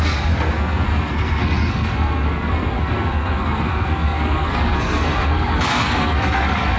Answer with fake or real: fake